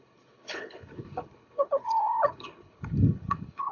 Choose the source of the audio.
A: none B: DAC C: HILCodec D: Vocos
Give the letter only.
C